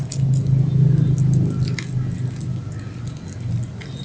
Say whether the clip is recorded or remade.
recorded